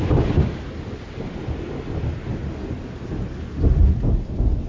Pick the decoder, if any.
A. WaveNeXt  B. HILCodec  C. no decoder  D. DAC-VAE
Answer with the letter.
C